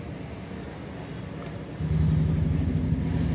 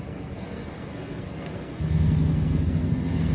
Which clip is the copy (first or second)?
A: second